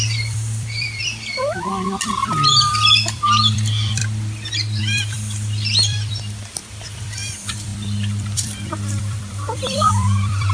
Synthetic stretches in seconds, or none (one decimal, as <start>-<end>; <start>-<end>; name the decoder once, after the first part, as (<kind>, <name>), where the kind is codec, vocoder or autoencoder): 0.0-4.0 (vocoder, BigVGAN v2); 4.8-10.5